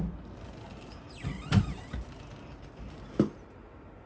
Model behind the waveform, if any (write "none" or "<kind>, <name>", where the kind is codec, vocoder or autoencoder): none